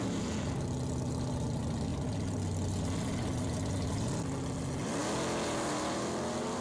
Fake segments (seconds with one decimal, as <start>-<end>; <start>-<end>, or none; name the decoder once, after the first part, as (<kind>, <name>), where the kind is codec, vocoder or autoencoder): none